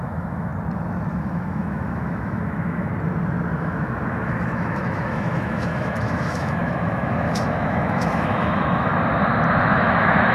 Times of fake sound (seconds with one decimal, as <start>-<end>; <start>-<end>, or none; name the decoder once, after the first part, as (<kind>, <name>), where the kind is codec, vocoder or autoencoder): 0.0-0.5 (autoencoder, DAC-VAE); 1.1-2.9; 3.6-8.9; 9.6-10.3